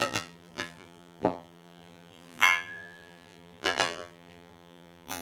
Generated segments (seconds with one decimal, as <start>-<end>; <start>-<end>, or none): 0.0-5.2